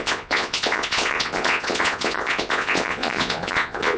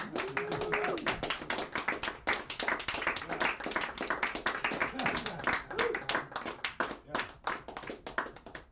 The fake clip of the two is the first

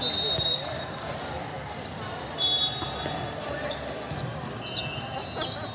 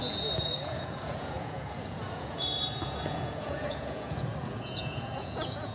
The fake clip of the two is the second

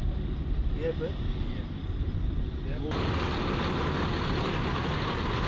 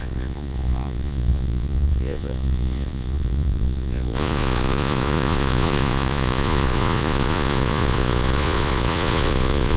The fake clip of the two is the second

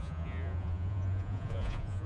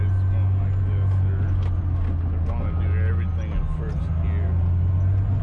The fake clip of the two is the first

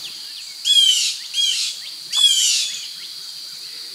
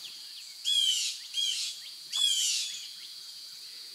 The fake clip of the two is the second